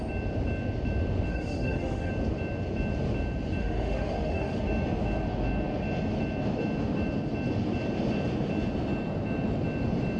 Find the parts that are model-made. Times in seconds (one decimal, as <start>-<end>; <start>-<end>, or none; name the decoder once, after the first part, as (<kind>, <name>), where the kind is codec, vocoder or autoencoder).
1.3-2.1 (autoencoder, DAC-VAE); 3.6-4.6